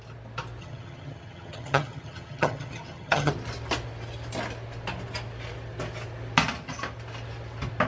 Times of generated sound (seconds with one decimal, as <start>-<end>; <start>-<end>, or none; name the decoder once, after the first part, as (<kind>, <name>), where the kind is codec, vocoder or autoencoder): 0.6-3.3 (vocoder, HiFi-GAN)